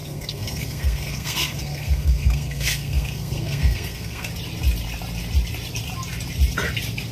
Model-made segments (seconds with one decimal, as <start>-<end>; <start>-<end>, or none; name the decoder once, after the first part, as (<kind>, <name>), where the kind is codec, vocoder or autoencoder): 0.0-4.3 (codec, SNAC)

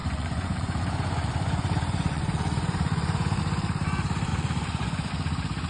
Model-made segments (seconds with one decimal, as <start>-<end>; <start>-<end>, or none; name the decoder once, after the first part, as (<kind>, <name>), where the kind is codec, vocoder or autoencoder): 0.0-3.4 (vocoder, Vocos); 4.3-5.1

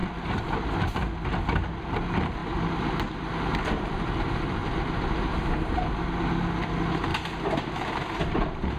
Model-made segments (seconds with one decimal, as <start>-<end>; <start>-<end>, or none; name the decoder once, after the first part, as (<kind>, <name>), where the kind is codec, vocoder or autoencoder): 0.0-2.4 (vocoder, BigVGAN v2); 3.3-4.6; 5.7-8.8

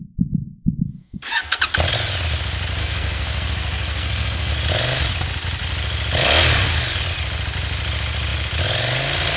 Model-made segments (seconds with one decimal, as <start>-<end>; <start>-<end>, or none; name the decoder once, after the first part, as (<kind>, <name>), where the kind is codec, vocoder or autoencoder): 1.0-1.6 (codec, SNAC); 2.8-4.5

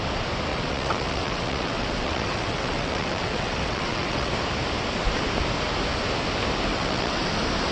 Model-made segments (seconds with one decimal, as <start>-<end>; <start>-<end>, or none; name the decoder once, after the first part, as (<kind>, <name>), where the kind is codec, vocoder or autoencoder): 0.5-4.3 (vocoder, WaveNeXt); 6.7-7.2